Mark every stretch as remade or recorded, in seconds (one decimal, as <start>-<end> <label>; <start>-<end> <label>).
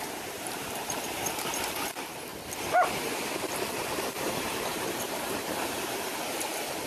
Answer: 0.0-2.3 remade; 2.3-3.0 recorded; 3.0-6.9 remade